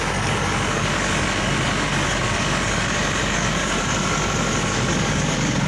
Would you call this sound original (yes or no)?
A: no